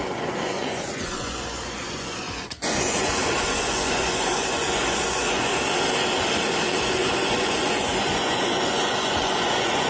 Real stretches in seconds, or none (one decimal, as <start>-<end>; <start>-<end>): 5.5-6.6